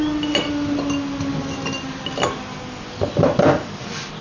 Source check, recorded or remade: recorded